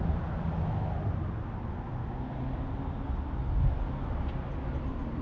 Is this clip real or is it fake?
real